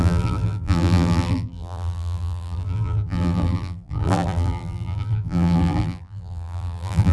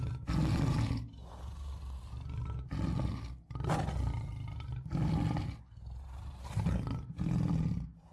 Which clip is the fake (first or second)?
first